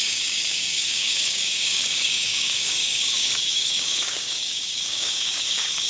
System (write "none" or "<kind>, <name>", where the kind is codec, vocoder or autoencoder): codec, DAC